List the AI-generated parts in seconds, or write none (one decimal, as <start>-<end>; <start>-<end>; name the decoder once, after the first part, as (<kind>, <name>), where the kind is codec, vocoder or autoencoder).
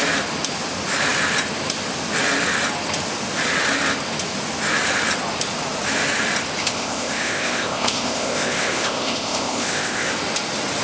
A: 6.6-10.1 (codec, ZipCodec)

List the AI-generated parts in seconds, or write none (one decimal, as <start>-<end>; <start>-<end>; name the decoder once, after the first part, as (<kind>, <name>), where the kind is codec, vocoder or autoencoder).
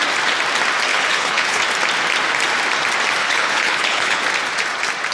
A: 0.9-1.6 (codec, HILCodec); 3.2-4.2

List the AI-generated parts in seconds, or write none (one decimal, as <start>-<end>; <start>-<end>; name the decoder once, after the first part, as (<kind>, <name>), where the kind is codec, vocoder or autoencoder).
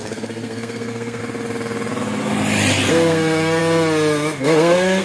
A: 0.0-1.2 (codec, SNAC); 2.9-3.6; 4.4-5.0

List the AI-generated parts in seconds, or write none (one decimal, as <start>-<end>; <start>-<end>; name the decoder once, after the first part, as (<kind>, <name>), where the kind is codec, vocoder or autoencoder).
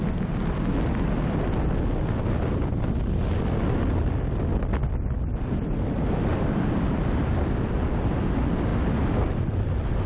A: none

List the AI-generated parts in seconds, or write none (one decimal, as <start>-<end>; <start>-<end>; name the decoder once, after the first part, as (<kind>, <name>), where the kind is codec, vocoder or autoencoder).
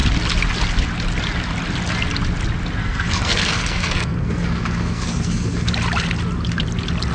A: 2.8-5.7 (codec, SNAC)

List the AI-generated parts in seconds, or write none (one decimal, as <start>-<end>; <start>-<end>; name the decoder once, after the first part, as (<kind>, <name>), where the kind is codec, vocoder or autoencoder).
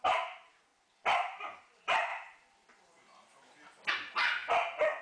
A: 0.0-0.7 (vocoder, BigVGAN v2); 1.4-2.1; 3.9-4.4